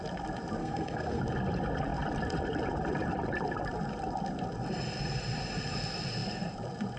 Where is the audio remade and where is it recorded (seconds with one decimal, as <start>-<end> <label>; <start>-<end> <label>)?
0.0-0.6 recorded; 0.6-1.2 remade; 1.2-7.0 recorded